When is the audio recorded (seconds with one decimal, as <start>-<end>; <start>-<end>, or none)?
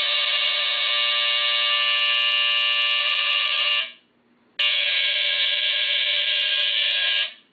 0.9-3.0; 3.7-4.7